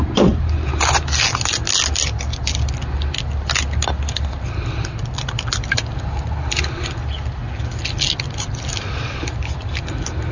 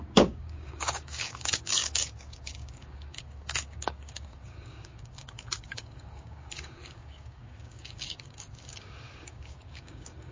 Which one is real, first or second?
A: first